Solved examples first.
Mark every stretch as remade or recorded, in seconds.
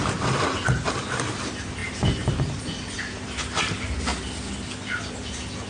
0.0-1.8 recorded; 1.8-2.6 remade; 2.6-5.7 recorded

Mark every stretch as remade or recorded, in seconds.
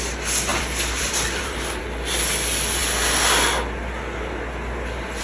0.0-0.5 recorded; 0.5-1.8 remade; 1.8-5.2 recorded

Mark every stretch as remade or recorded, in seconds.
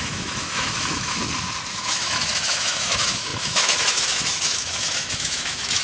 0.0-1.2 remade; 1.2-1.7 recorded; 1.7-5.8 remade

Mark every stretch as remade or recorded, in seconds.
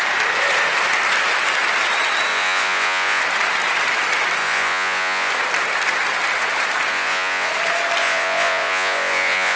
0.0-2.3 recorded; 2.3-3.2 remade; 3.2-4.4 recorded; 4.4-5.3 remade; 5.3-6.9 recorded; 6.9-7.5 remade; 7.5-8.0 recorded; 8.0-9.6 remade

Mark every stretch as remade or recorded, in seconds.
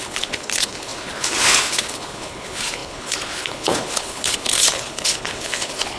0.0-6.0 remade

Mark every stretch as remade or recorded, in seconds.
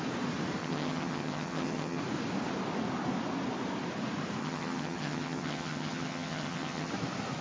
0.0-0.6 recorded; 0.6-2.0 remade; 2.0-4.4 recorded; 4.4-6.9 remade; 6.9-7.4 recorded